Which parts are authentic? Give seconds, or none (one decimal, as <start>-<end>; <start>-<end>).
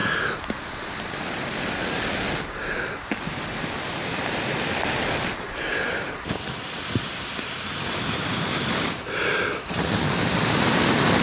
0.0-11.2